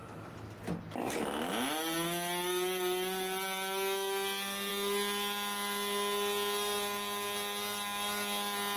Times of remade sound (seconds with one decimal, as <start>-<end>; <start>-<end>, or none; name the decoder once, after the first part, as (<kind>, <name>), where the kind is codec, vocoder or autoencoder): none